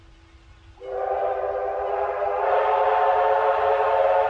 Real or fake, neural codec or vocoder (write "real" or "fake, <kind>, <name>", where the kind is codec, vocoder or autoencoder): real